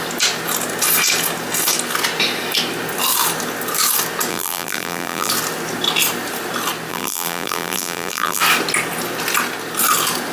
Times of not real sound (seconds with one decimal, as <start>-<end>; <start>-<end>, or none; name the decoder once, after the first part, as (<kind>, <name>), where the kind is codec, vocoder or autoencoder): 4.3-5.3 (vocoder, BigVGAN v2); 6.9-8.4